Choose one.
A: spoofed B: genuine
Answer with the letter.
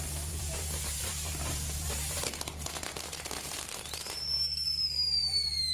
A